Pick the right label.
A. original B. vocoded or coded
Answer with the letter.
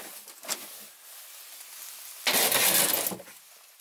A